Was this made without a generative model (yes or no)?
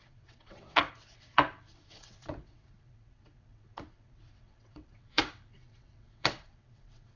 no